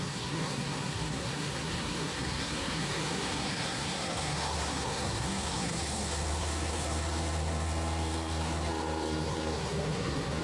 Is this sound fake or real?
fake